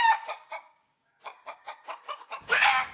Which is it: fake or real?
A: fake